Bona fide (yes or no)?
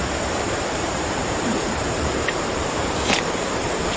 no